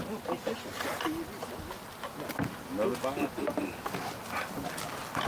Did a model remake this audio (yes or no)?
no